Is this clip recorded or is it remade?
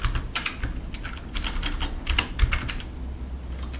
recorded